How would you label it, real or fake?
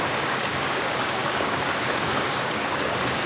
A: fake